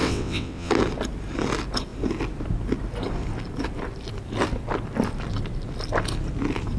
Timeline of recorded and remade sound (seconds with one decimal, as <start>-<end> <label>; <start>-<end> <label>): 0.0-0.7 remade; 0.7-6.8 recorded